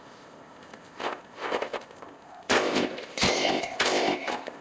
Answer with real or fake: fake